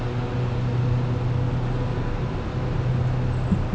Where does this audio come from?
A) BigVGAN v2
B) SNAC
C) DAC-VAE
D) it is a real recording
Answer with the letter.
D